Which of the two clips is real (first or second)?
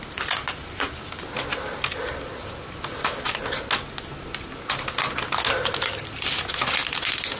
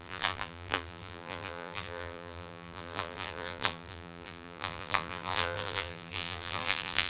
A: first